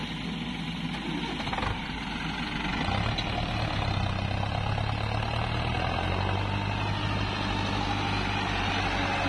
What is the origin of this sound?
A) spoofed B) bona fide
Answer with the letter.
B